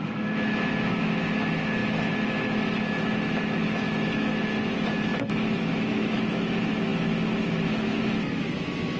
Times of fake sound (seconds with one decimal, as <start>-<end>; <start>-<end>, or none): 0.0-9.0